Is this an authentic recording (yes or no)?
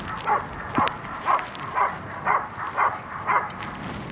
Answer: yes